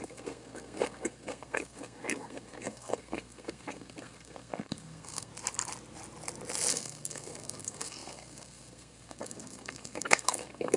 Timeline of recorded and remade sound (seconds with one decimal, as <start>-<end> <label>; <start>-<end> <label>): 0.0-5.3 remade; 5.3-6.7 recorded; 6.7-10.8 remade